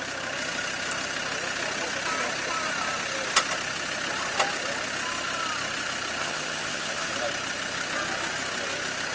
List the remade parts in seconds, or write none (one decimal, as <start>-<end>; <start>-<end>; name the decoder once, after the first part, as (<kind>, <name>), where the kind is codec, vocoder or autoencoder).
6.2-7.1 (vocoder, HiFi-GAN)